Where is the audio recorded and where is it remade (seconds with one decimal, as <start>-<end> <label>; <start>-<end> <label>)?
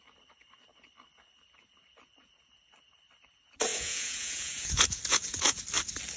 0.0-3.7 recorded; 3.7-5.6 remade; 5.6-6.2 recorded